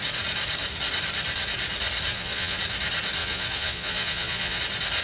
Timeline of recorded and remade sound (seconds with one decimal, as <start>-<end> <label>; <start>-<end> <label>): 0.0-2.1 recorded; 2.1-2.6 remade; 2.6-3.2 recorded; 3.2-4.6 remade; 4.6-5.0 recorded